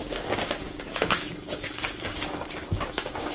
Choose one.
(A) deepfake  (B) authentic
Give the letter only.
A